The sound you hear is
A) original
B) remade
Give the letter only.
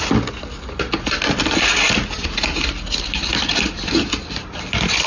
A